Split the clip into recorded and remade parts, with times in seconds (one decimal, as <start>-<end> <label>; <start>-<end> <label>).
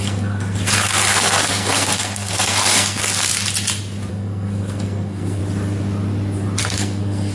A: 0.0-3.3 remade; 3.3-4.1 recorded; 4.1-5.4 remade; 5.4-6.6 recorded; 6.6-7.3 remade